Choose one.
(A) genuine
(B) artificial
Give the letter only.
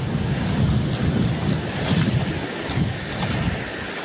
A